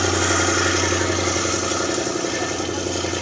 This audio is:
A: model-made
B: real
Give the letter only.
B